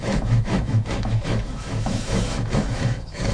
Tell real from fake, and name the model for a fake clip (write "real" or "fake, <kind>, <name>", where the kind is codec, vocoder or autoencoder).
fake, autoencoder, DAC-VAE